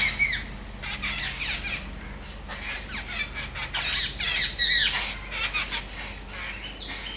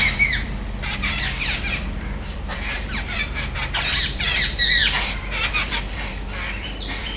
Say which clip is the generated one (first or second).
second